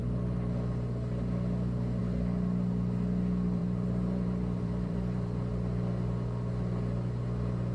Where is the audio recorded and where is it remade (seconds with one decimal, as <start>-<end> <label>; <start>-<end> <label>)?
0.0-3.6 recorded; 3.6-5.5 remade; 5.5-7.7 recorded